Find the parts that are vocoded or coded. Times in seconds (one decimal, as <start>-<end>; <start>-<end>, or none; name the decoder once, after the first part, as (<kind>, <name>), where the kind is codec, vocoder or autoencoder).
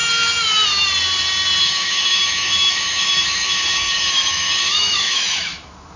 1.6-6.0 (autoencoder, DAC-VAE)